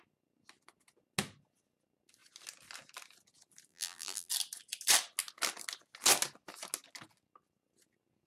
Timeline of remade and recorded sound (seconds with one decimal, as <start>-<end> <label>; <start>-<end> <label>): 0.0-3.7 recorded; 3.7-4.3 remade; 4.3-8.3 recorded